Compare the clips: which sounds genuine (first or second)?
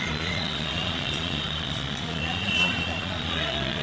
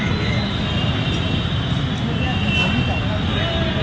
second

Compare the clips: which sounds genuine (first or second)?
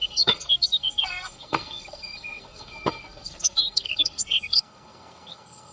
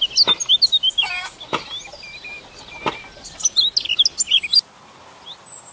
second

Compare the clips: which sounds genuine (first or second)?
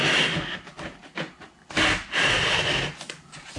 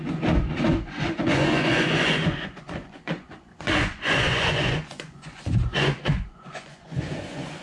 first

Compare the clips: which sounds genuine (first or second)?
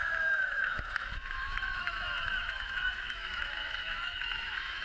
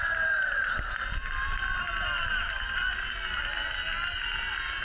second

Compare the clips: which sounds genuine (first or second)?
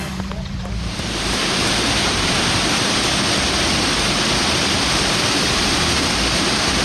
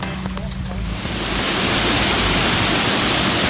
second